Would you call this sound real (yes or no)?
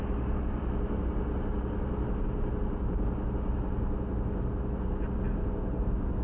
yes